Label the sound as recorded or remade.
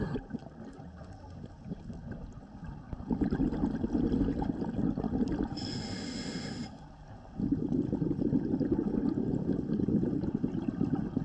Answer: recorded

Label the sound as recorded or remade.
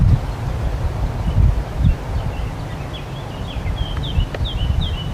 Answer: recorded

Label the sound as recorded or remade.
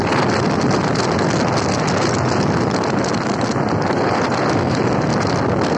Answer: recorded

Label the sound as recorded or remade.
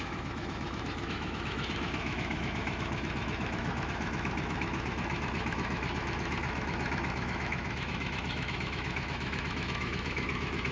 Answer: remade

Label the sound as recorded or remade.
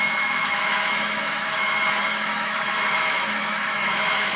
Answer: remade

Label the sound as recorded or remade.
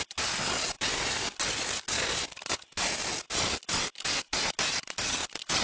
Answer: recorded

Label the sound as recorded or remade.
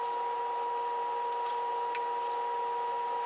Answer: recorded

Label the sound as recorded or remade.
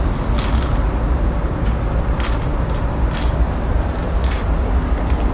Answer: recorded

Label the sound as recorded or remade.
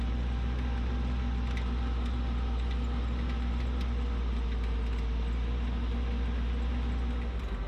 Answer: recorded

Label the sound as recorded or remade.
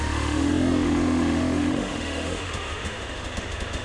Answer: remade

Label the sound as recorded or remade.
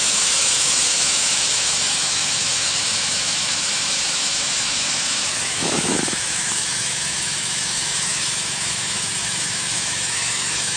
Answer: remade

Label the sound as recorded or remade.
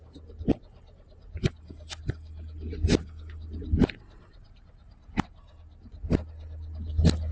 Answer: recorded